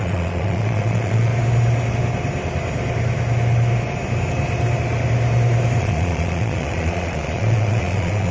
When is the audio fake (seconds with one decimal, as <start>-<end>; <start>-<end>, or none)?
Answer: 0.0-1.3; 5.8-8.3